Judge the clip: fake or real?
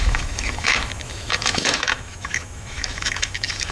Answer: fake